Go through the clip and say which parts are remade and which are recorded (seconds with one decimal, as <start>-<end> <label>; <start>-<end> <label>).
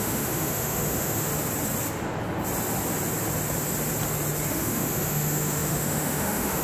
0.0-1.3 remade; 1.3-4.5 recorded; 4.5-6.6 remade